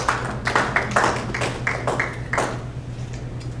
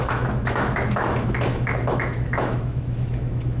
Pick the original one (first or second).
first